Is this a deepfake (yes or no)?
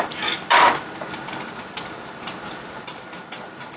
no